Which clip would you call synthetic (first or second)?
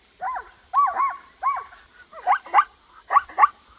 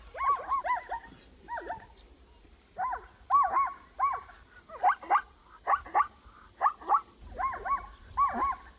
first